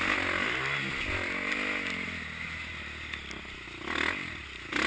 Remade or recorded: recorded